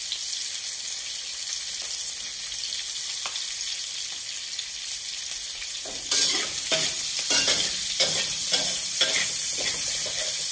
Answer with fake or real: real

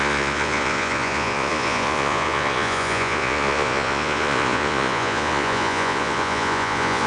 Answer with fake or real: fake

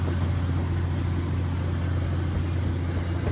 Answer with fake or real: real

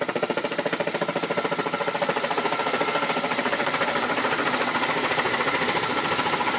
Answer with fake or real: real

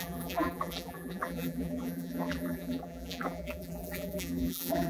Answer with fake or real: fake